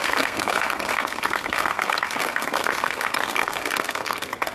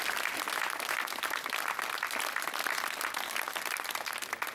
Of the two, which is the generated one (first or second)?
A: first